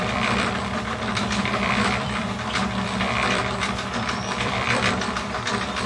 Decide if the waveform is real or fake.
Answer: fake